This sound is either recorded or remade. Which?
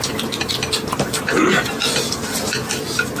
recorded